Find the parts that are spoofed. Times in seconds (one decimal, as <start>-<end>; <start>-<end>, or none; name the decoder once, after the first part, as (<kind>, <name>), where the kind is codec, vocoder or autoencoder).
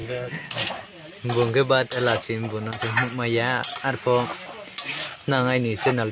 0.0-0.7 (codec, SNAC)